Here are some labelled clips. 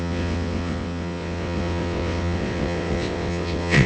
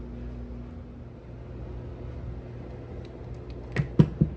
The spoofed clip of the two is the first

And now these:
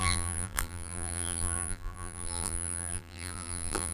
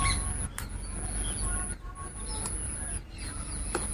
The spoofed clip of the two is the first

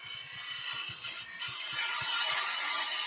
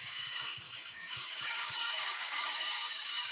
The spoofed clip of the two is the second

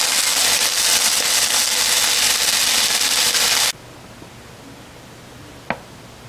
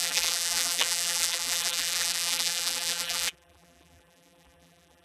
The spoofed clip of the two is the second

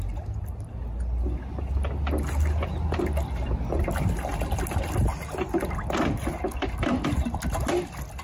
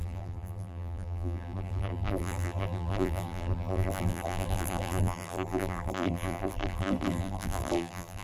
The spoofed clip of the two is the second